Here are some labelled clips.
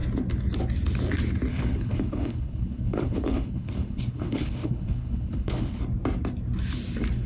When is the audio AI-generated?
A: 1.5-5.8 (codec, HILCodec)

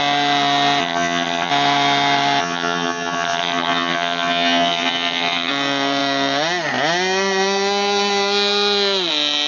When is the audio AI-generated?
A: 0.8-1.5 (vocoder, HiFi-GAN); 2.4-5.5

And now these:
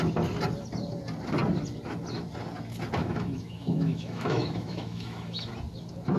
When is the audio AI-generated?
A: 3.0-5.5 (autoencoder, DAC-VAE)

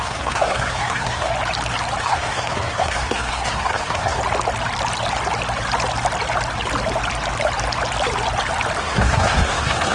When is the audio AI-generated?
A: 0.0-1.3 (codec, SNAC); 2.0-4.2; 8.8-9.9

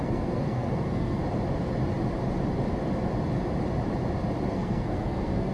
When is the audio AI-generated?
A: 0.0-1.2 (codec, SNAC); 4.5-5.5